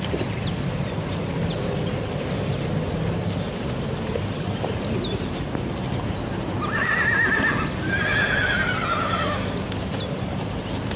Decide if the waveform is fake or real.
real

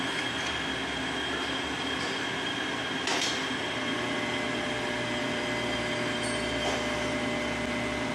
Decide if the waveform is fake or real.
real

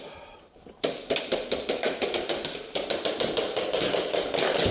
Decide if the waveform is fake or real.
real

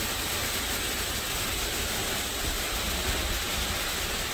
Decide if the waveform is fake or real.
real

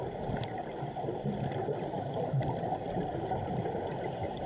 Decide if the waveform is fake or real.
fake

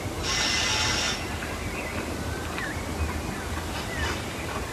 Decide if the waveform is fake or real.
real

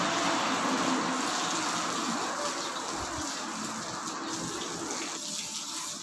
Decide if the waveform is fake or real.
real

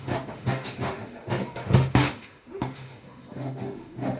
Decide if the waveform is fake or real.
fake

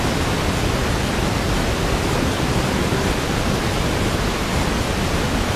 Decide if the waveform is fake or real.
real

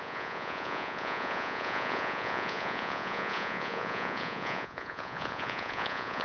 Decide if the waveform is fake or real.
fake